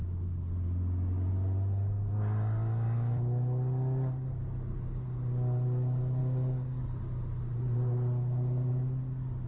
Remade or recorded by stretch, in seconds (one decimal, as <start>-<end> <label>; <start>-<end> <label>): 0.0-9.5 recorded